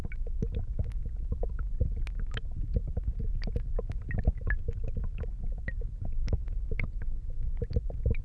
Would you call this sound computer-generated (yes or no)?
no